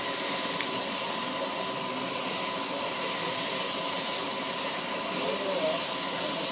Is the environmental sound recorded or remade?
recorded